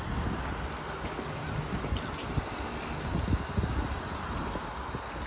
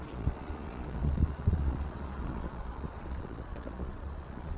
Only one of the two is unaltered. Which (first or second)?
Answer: first